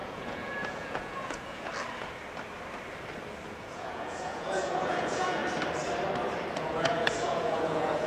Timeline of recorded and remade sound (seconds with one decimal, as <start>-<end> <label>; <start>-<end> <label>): 0.0-1.7 remade; 1.7-3.6 recorded; 3.6-5.4 remade; 5.4-6.6 recorded; 6.6-8.1 remade